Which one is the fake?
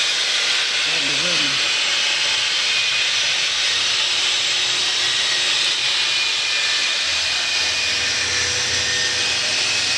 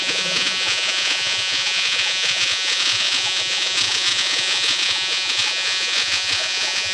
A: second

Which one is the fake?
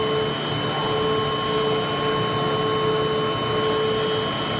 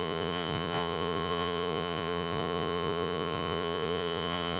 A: second